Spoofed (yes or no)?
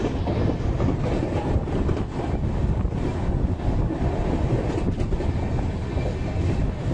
no